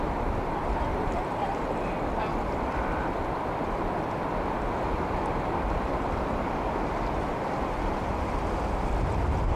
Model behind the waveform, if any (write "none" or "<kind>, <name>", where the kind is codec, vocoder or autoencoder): none